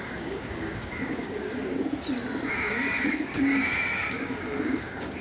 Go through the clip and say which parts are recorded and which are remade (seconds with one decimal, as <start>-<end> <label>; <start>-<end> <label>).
0.0-1.6 remade; 1.6-2.5 recorded; 2.5-5.2 remade